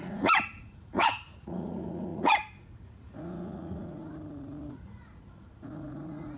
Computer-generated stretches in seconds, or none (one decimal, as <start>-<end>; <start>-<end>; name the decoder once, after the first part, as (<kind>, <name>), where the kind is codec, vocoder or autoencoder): 0.0-4.0 (vocoder, Vocos); 4.7-6.4